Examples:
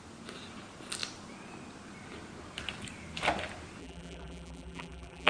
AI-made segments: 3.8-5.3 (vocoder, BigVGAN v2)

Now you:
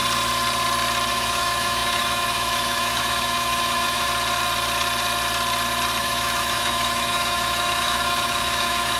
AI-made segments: 1.1-4.1 (autoencoder, DAC-VAE); 6.0-9.0

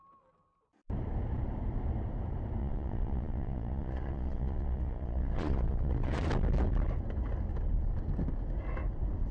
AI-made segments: 2.6-6.3 (vocoder, Vocos)

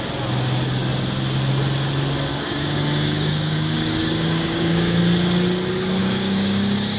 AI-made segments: 2.3-5.0 (codec, DAC); 6.0-7.0